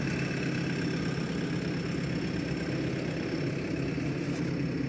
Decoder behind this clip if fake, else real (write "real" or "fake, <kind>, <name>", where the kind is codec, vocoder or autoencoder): real